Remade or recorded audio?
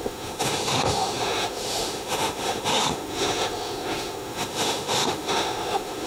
remade